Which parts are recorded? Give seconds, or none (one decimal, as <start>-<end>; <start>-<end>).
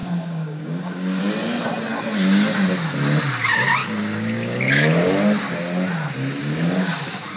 1.2-3.8; 5.1-6.4